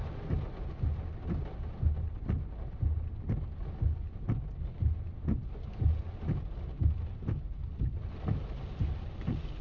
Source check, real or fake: real